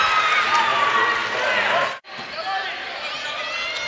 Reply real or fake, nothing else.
real